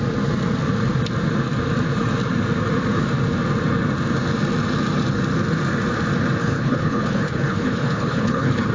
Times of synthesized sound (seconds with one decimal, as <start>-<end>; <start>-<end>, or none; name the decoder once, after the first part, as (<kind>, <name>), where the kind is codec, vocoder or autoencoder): 6.4-8.7 (codec, HILCodec)